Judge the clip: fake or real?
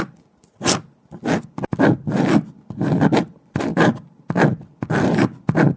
real